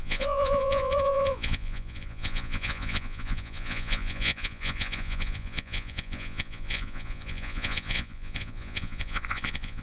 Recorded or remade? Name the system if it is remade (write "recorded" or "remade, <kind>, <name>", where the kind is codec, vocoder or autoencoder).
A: remade, vocoder, Vocos